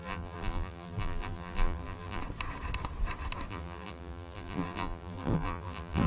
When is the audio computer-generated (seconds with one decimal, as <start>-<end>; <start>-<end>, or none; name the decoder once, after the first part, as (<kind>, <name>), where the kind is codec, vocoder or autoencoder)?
0.0-2.2 (vocoder, BigVGAN v2); 3.5-6.1